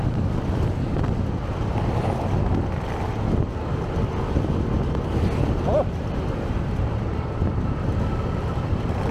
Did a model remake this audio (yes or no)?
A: no